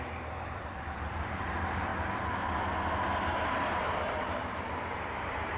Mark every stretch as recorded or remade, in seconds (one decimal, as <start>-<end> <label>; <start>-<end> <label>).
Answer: 0.0-1.9 remade; 1.9-3.5 recorded; 3.5-5.6 remade